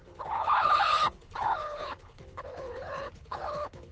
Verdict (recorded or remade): remade